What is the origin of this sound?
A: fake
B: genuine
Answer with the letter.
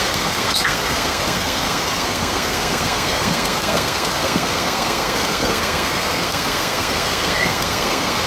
A